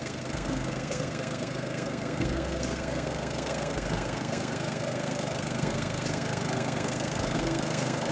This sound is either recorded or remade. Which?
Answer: remade